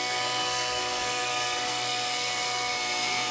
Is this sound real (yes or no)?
no